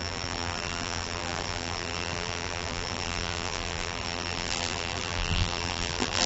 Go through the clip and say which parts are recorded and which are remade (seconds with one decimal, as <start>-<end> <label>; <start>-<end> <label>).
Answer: 0.0-6.3 remade